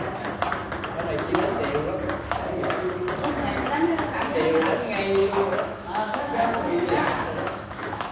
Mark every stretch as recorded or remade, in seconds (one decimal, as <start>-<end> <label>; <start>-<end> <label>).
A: 0.0-5.2 recorded; 5.2-8.1 remade